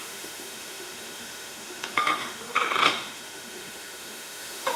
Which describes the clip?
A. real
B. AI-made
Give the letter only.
B